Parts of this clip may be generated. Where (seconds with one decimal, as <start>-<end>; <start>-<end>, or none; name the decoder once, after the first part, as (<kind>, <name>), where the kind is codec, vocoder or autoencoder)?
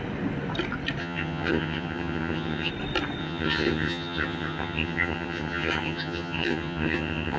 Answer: 1.0-2.7 (vocoder, HiFi-GAN); 3.2-7.4